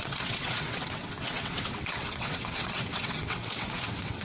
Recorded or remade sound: remade